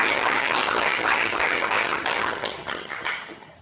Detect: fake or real fake